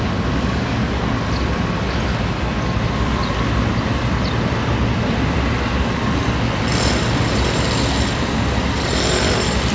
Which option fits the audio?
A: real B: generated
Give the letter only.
A